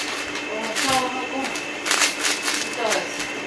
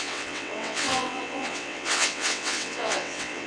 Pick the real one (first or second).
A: first